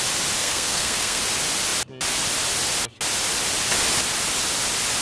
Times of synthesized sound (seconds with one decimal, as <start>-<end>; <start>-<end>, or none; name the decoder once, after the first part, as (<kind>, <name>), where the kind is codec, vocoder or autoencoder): 0.4-1.2 (codec, SNAC)